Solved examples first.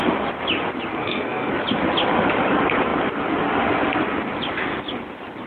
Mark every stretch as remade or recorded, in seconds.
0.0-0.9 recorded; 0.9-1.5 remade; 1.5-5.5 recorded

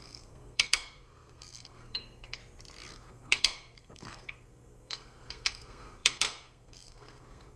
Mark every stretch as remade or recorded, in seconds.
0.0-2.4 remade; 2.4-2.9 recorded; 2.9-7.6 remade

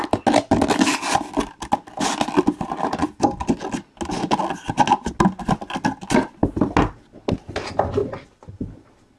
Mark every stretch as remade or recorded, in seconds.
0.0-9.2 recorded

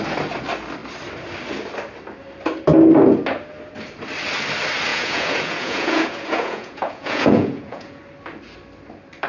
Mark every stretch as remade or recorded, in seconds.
0.0-4.9 recorded; 4.9-8.0 remade; 8.0-9.3 recorded